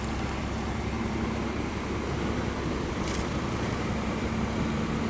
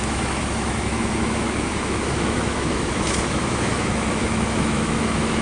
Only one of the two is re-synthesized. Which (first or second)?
second